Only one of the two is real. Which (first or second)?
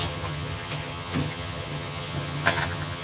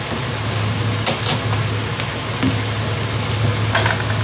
second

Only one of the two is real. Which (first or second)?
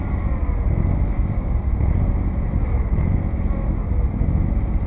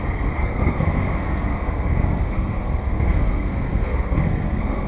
first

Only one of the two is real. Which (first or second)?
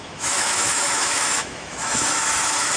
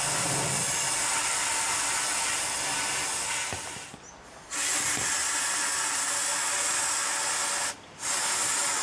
second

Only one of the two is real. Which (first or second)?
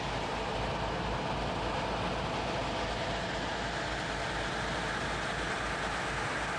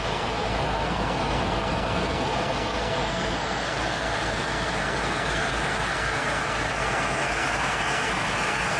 first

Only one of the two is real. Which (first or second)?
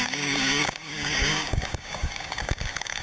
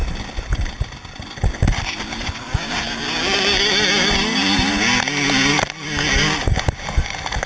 second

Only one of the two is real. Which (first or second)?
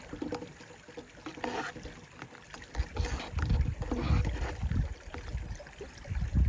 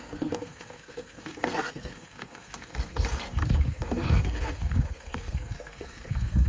first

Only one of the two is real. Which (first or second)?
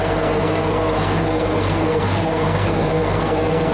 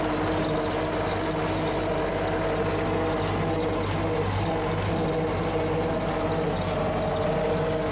second